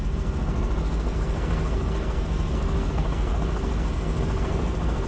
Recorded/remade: remade